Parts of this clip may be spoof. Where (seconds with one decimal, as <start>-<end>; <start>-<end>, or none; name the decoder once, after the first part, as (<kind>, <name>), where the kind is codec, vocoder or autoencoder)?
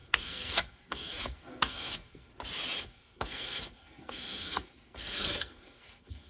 0.0-2.3 (codec, SNAC); 2.8-6.3